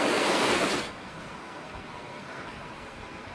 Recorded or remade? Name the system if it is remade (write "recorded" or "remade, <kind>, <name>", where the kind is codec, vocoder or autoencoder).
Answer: remade, codec, SNAC